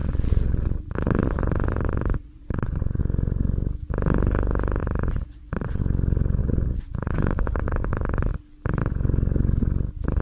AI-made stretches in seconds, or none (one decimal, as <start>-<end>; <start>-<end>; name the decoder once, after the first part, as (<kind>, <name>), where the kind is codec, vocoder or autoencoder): 0.0-3.0 (vocoder, Vocos); 4.8-5.8; 6.4-8.3